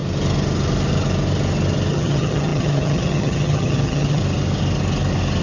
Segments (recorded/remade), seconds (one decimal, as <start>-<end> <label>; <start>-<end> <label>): 0.0-1.9 recorded; 1.9-4.2 remade; 4.2-5.4 recorded